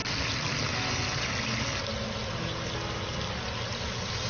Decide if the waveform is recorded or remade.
recorded